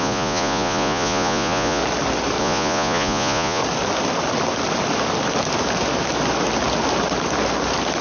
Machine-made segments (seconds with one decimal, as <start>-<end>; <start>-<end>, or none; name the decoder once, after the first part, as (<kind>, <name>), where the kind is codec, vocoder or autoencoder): 0.0-1.8 (vocoder, Vocos); 2.4-3.6